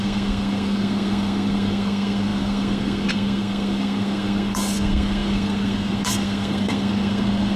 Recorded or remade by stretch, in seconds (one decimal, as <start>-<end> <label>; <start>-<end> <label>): 0.0-7.6 remade